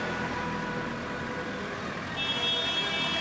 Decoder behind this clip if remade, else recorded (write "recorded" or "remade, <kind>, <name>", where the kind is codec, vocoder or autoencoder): recorded